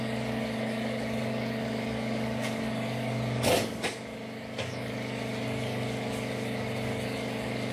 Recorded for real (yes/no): no